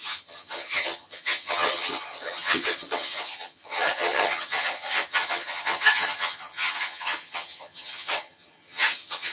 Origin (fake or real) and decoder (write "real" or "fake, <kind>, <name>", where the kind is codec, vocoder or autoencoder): fake, vocoder, HiFi-GAN